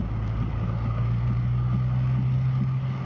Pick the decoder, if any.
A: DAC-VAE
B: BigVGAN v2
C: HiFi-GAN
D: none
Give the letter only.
D